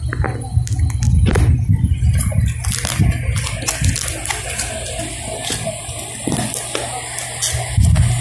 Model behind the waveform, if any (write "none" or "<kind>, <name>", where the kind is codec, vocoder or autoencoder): none